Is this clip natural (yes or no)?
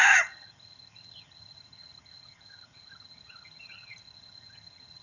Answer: no